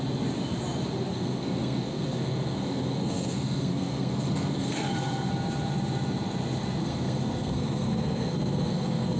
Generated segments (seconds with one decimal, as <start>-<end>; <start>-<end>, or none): 1.1-5.3; 6.8-9.2